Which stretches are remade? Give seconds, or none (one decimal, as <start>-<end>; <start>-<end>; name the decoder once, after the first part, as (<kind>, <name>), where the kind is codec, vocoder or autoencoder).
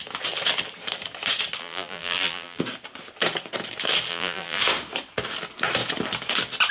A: 1.6-2.6 (vocoder, BigVGAN v2); 4.1-4.6